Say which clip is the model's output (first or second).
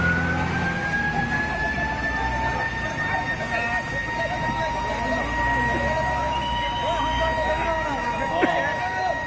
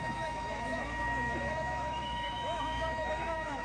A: second